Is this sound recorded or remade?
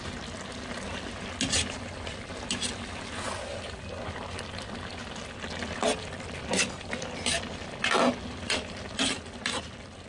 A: recorded